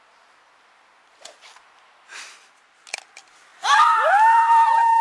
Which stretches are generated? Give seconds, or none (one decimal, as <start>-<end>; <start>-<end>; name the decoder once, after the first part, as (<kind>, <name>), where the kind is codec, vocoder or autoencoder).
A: 3.5-5.0 (vocoder, BigVGAN v2)

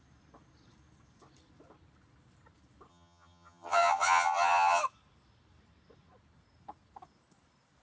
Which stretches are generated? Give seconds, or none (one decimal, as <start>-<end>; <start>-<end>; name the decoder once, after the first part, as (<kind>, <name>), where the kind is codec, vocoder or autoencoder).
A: 2.9-4.8 (vocoder, HiFi-GAN)